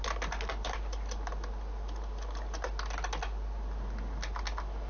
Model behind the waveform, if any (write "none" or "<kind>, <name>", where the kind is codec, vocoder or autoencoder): none